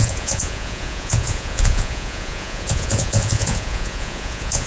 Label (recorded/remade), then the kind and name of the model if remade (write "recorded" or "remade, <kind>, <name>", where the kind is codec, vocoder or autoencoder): remade, vocoder, Vocos